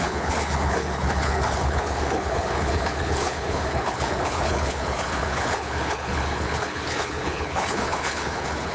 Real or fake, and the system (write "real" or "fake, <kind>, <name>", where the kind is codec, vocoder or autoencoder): fake, codec, HILCodec